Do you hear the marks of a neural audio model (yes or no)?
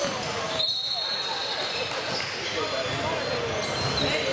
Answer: no